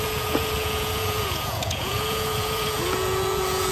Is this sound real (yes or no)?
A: no